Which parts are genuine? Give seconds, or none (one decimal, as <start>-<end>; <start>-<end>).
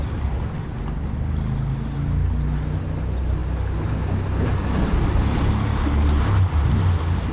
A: 0.0-7.3